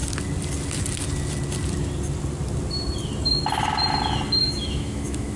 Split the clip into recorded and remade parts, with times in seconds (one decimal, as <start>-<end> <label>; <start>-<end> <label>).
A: 0.0-4.4 recorded; 4.4-5.4 remade